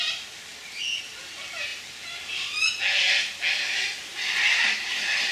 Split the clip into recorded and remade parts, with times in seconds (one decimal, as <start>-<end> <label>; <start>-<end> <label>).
0.0-0.5 recorded; 0.5-1.0 remade; 1.0-1.7 recorded; 1.7-2.7 remade; 2.7-5.3 recorded